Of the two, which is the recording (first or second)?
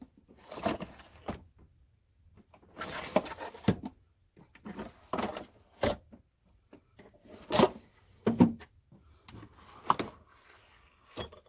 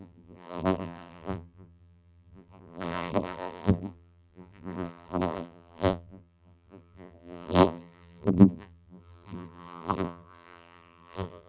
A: first